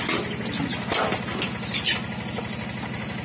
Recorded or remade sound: recorded